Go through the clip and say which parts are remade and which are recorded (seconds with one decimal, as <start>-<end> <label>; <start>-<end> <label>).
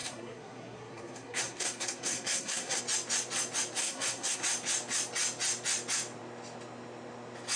0.0-2.8 remade; 2.8-3.8 recorded; 3.8-4.4 remade; 4.4-7.6 recorded